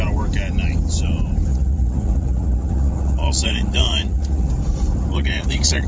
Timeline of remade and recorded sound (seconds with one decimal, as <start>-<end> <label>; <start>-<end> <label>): 0.0-1.5 recorded; 1.5-4.5 remade; 4.5-5.1 recorded; 5.1-5.9 remade